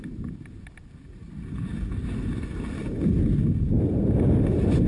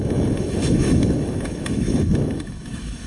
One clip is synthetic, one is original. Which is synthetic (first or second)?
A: second